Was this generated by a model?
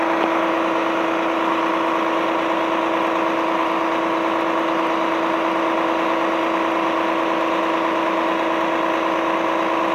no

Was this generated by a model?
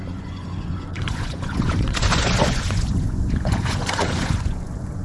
yes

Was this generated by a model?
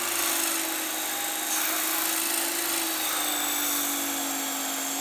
no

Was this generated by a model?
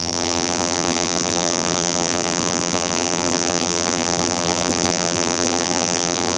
yes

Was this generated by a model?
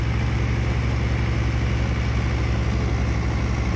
no